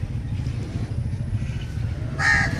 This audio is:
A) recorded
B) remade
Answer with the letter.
A